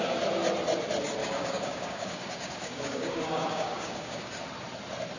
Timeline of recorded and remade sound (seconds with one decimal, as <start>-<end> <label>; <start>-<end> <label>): 0.0-1.2 recorded; 1.2-4.3 remade; 4.3-5.2 recorded